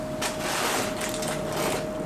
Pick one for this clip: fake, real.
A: real